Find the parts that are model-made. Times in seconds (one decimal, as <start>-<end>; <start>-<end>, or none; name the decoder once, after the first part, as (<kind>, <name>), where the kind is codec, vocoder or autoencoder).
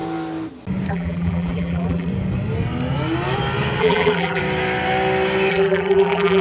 0.9-2.1 (vocoder, BigVGAN v2); 3.8-4.4; 5.5-6.4